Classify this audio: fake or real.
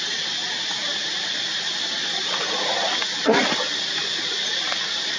real